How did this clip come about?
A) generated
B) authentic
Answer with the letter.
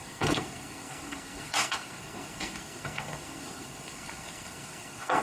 A